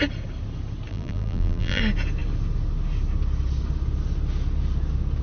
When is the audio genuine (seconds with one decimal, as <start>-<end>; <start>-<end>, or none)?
0.0-0.9; 1.8-5.2